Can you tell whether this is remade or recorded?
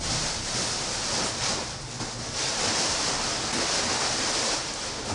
recorded